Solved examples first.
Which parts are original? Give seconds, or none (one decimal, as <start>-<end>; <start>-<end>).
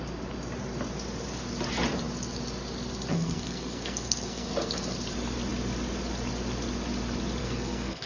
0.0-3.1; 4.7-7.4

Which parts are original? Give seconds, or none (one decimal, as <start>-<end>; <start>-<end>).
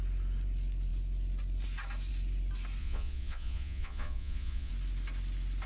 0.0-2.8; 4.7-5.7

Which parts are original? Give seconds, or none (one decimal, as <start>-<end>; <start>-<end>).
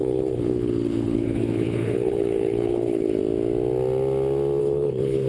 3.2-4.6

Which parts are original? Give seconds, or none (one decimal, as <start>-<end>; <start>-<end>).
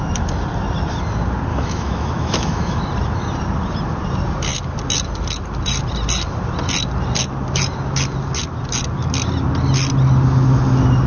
0.0-1.5; 2.8-11.1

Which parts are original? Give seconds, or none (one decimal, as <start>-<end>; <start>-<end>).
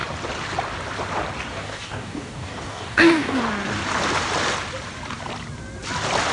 0.0-1.5; 3.4-6.3